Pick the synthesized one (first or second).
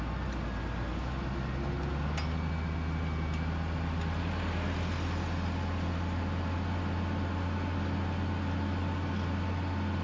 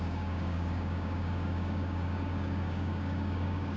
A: second